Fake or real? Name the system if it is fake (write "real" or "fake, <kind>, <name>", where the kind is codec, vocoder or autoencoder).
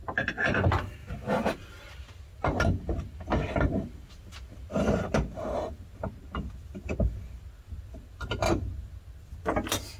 real